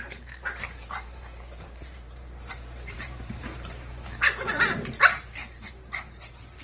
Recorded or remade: remade